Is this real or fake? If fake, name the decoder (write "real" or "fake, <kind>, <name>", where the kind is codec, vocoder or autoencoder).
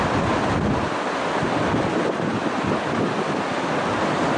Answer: real